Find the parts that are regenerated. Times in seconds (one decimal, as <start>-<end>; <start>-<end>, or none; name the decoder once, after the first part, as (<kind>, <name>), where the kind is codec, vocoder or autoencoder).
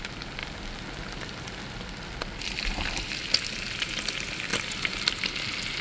none